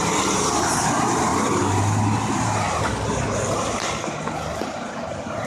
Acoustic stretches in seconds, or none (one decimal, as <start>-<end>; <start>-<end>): 0.0-5.5